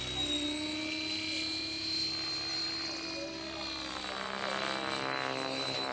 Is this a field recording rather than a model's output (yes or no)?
yes